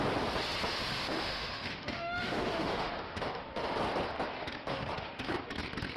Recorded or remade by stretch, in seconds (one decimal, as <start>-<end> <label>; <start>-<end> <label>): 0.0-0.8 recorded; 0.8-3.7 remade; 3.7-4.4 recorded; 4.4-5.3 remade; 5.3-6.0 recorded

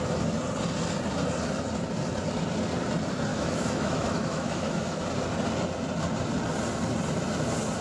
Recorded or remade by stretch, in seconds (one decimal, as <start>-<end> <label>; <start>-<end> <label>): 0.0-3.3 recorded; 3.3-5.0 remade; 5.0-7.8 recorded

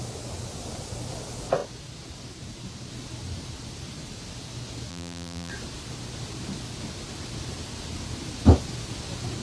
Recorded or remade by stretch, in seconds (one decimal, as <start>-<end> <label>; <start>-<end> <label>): 0.0-4.9 recorded; 4.9-5.5 remade; 5.5-9.4 recorded

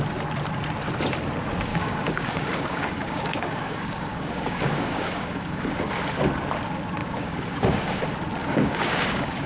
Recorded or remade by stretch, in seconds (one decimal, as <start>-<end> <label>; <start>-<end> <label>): 0.0-1.7 recorded; 1.7-5.9 remade; 5.9-7.0 recorded; 7.0-8.0 remade; 8.0-8.4 recorded; 8.4-9.5 remade

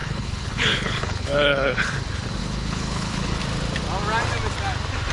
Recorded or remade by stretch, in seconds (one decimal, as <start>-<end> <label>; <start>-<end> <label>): 0.0-1.9 remade; 1.9-2.4 recorded; 2.4-3.4 remade; 3.4-5.1 recorded

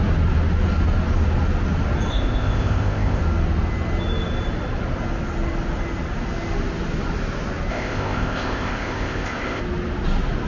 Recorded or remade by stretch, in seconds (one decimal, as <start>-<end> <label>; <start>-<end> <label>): 0.0-2.1 recorded; 2.1-3.2 remade; 3.2-7.7 recorded; 7.7-9.6 remade; 9.6-10.5 recorded